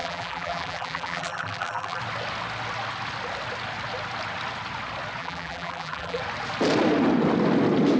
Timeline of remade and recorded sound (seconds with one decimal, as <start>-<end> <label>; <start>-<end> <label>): 0.0-2.0 remade; 2.0-5.2 recorded; 5.2-6.2 remade; 6.2-8.0 recorded